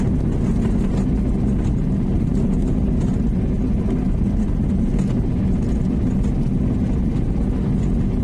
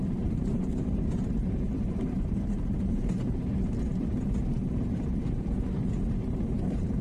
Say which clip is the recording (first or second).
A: first